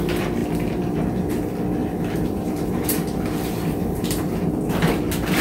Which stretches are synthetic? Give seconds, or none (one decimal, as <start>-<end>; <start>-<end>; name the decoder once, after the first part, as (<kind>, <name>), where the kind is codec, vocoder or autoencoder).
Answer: 1.8-5.0 (vocoder, BigVGAN v2)

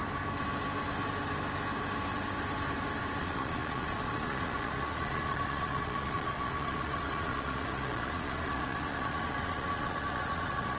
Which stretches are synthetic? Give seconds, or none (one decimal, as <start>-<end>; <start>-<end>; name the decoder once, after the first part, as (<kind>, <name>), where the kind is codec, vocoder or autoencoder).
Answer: 3.2-10.8 (vocoder, Vocos)